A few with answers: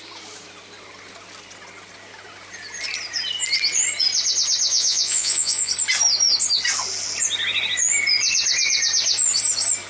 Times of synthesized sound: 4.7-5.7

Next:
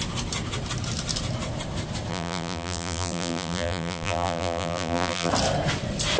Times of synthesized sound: 2.1-5.3

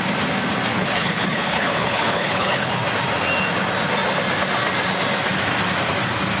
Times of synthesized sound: 0.7-2.7

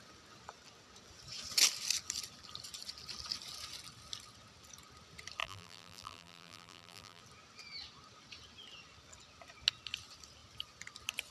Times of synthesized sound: 5.4-7.2

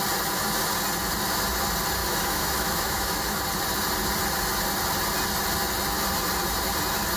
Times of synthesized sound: 2.0-3.4

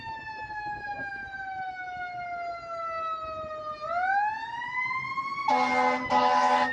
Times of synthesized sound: 0.0-1.2; 1.7-2.1; 6.1-6.7

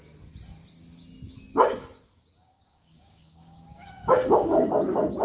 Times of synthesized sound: 2.4-4.7